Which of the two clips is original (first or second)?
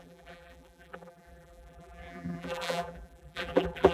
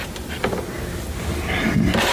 second